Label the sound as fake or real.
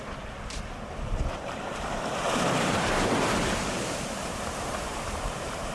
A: fake